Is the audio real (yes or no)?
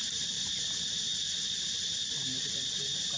yes